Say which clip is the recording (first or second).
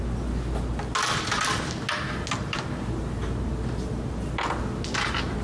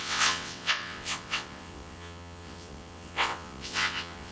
first